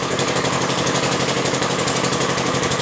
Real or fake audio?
fake